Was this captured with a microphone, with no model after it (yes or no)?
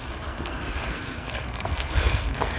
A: no